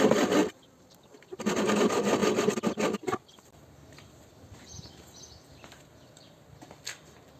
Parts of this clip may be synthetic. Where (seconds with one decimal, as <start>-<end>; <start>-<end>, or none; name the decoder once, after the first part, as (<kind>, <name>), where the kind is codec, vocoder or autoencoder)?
0.4-1.6 (vocoder, BigVGAN v2)